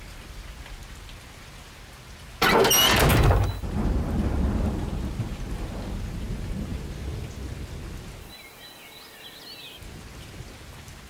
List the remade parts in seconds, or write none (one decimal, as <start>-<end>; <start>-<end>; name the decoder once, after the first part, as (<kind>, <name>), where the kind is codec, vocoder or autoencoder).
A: none